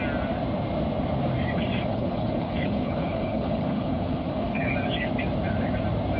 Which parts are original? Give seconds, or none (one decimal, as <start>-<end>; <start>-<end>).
0.0-1.9; 4.7-6.2